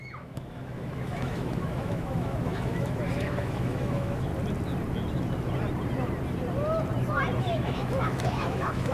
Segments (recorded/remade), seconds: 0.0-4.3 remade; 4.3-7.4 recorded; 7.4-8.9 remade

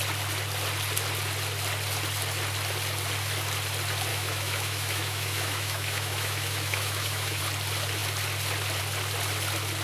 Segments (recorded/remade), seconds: 0.0-4.1 recorded; 4.1-7.4 remade; 7.4-9.8 recorded

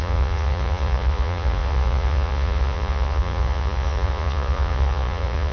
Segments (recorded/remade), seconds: 0.0-5.5 remade

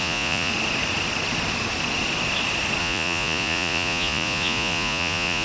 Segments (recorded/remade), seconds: 0.0-0.5 remade; 0.5-2.8 recorded; 2.8-5.4 remade

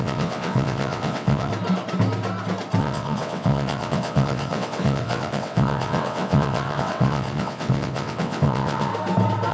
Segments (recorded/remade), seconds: 0.0-1.5 remade; 1.5-2.8 recorded; 2.8-8.9 remade; 8.9-9.5 recorded

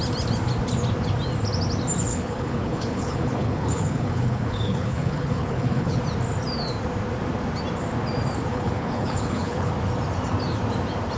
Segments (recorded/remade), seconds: 0.0-2.1 recorded; 2.1-6.0 remade; 6.0-8.5 recorded; 8.5-9.7 remade; 9.7-11.2 recorded

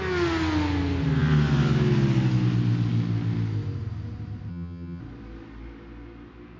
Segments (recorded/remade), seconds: 0.0-4.5 recorded; 4.5-5.0 remade; 5.0-6.6 recorded